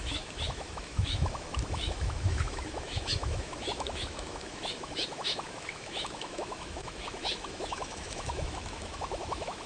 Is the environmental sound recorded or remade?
remade